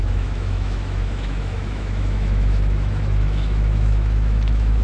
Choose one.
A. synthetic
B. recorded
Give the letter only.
A